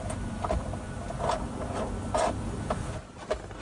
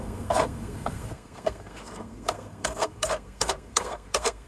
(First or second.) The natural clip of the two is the first